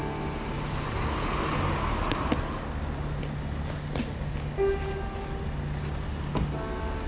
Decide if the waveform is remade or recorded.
recorded